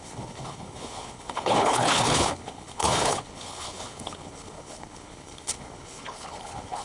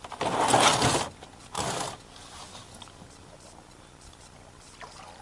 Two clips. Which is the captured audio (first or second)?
second